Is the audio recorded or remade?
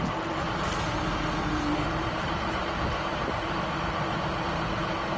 recorded